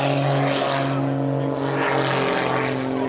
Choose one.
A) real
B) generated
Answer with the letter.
A